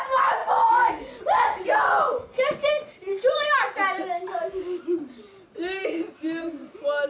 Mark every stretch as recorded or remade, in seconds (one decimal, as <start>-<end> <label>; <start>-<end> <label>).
0.0-7.1 recorded